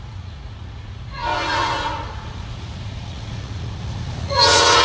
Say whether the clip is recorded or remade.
remade